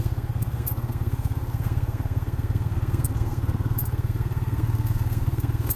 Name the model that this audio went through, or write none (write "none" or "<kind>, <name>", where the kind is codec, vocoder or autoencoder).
codec, SNAC